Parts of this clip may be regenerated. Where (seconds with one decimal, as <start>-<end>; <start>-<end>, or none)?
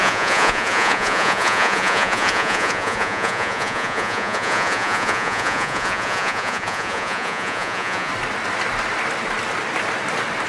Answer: 0.0-8.1